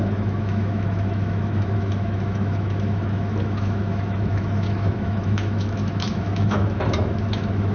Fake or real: fake